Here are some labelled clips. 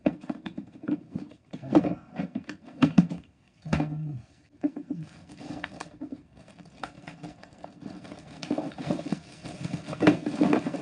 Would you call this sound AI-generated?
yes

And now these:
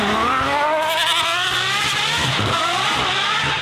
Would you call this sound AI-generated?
no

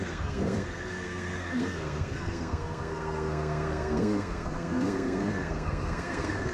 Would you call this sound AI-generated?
yes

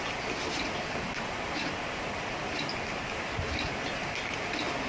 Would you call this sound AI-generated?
no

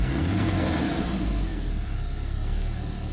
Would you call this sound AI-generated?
yes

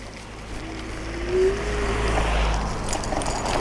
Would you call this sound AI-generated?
no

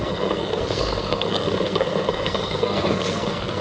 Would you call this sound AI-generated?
yes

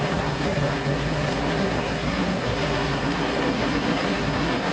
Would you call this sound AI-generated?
yes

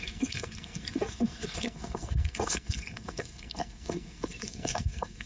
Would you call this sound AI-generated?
yes